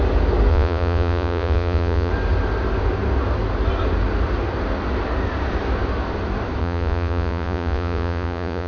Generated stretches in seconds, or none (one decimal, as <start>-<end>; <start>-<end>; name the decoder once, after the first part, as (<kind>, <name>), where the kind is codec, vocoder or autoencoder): 0.5-2.1 (vocoder, Vocos); 6.6-8.7